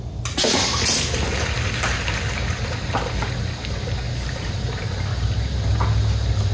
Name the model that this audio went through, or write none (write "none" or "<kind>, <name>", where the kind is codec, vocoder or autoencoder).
none